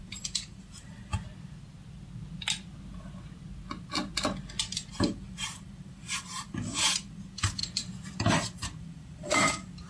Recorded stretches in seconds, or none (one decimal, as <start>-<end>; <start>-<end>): 1.1-5.0; 7.6-8.2